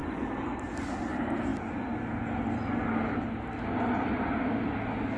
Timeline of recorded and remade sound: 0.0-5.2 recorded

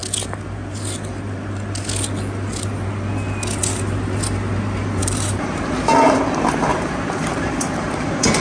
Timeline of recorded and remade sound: 0.0-5.0 recorded; 5.0-5.7 remade; 5.7-6.7 recorded; 6.7-7.9 remade; 7.9-8.4 recorded